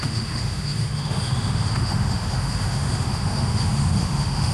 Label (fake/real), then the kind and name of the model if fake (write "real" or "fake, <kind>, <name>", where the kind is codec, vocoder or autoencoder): fake, autoencoder, DAC-VAE